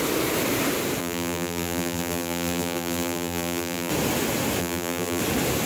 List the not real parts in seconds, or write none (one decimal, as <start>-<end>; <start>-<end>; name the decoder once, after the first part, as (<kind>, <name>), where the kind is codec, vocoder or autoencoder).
1.0-3.9 (vocoder, BigVGAN v2); 4.6-5.2